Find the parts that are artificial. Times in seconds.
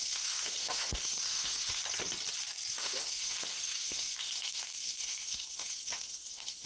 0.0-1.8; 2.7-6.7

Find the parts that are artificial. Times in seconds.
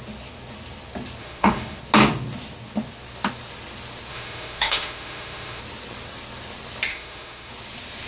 1.2-1.8; 4.1-5.6; 6.9-7.5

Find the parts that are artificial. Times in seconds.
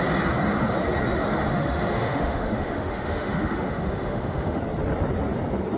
1.5-4.6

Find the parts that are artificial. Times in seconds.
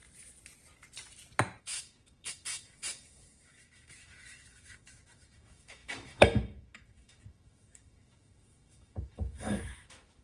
1.6-10.2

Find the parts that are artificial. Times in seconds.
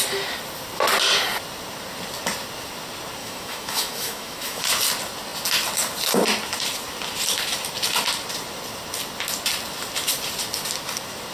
3.2-4.6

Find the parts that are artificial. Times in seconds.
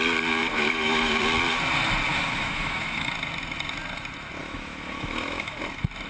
0.4-1.2; 2.1-3.1; 4.4-5.6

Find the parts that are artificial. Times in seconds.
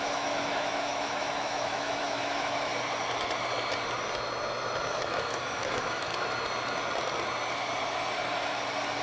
0.0-2.7; 4.9-6.1